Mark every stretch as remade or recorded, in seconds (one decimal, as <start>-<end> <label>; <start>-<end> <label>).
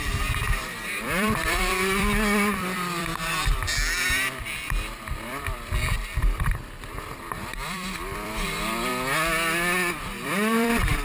0.0-8.9 remade; 8.9-10.1 recorded; 10.1-11.0 remade